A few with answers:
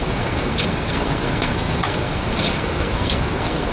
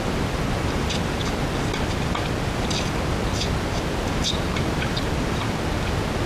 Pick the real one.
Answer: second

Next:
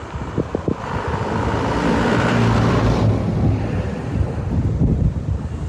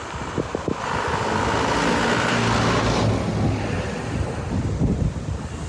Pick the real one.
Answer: second